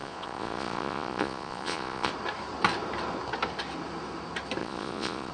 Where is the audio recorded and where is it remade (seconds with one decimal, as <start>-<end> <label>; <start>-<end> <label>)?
0.0-2.1 remade; 2.1-4.6 recorded; 4.6-5.3 remade